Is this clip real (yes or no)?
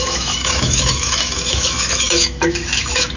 no